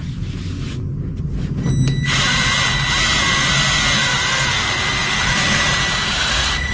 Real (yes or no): yes